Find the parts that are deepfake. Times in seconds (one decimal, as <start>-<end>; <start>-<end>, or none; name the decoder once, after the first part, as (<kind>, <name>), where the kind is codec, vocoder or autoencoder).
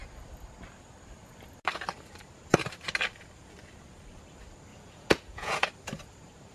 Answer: 4.7-5.7 (vocoder, Vocos)